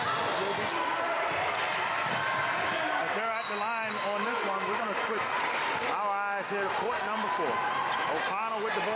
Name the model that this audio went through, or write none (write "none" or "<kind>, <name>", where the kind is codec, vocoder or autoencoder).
none